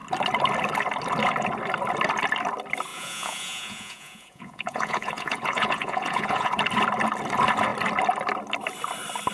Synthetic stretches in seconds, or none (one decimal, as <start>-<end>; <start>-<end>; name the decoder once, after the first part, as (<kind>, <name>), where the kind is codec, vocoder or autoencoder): 2.9-6.5 (vocoder, Vocos)